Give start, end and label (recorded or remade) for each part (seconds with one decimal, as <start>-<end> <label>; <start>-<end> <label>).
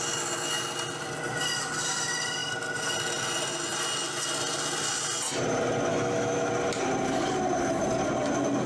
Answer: 0.0-5.9 recorded; 5.9-6.5 remade; 6.5-8.7 recorded